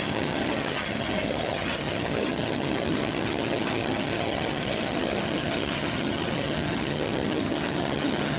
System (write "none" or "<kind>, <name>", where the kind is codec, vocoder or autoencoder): vocoder, HiFi-GAN